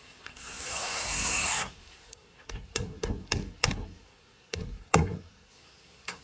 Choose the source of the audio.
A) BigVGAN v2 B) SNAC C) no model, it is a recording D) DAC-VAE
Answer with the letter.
B